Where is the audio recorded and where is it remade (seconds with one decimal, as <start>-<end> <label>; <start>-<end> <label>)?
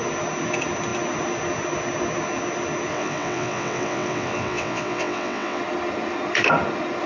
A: 0.0-2.9 recorded; 2.9-5.6 remade; 5.6-7.1 recorded